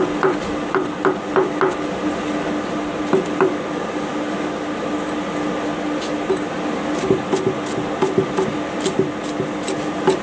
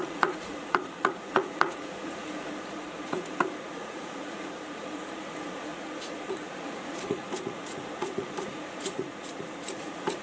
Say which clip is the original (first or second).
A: first